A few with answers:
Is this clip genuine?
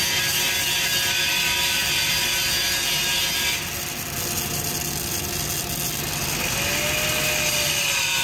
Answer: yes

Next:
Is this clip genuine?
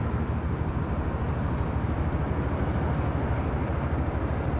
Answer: yes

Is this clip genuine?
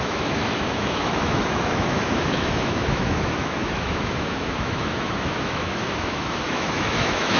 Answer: no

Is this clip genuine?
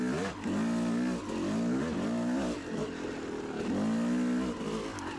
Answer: yes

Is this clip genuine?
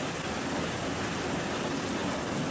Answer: yes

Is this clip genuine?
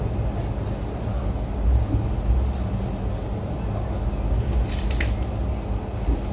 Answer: yes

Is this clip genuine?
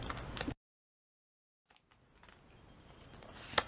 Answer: yes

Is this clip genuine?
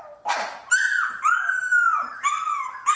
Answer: yes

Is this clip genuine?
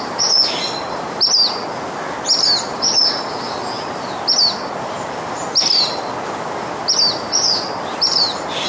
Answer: yes